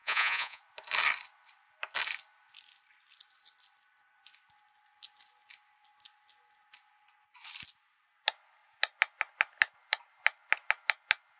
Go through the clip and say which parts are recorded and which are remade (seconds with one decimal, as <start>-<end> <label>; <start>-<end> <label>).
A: 0.0-0.6 remade; 0.6-11.4 recorded